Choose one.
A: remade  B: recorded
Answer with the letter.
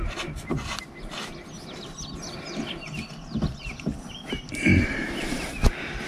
B